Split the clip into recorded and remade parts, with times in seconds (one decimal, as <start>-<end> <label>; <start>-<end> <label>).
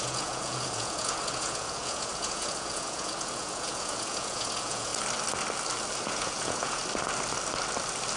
0.0-4.9 remade; 4.9-6.1 recorded; 6.1-6.8 remade; 6.8-8.2 recorded